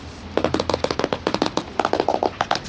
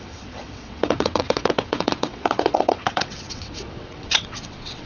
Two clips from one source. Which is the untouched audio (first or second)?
first